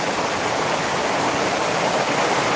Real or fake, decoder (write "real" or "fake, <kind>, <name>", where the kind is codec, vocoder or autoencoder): real